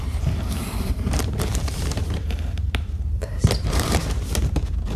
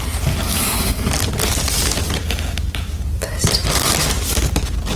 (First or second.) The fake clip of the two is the first